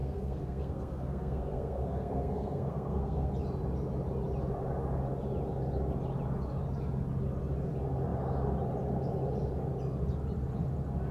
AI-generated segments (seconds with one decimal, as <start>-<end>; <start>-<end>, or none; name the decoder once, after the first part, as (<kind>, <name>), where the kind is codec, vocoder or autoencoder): 0.0-3.3 (codec, SNAC)